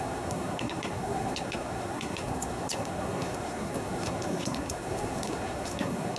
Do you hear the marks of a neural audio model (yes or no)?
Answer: yes